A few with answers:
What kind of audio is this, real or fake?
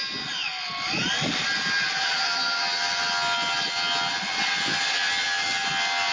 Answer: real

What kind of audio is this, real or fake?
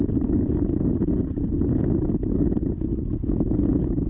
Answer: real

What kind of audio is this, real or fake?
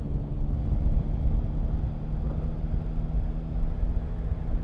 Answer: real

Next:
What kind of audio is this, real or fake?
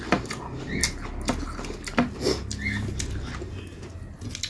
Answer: real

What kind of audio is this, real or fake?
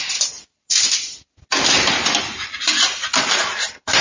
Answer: real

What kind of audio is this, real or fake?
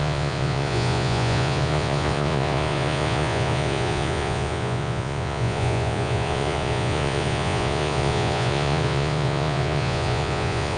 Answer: fake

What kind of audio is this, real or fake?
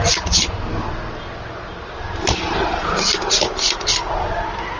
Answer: real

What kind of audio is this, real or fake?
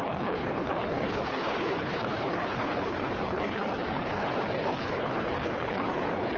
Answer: fake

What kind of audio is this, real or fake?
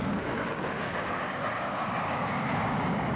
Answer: fake